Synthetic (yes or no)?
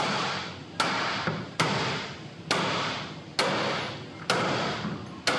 no